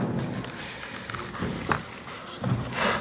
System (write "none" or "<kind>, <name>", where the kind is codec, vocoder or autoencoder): none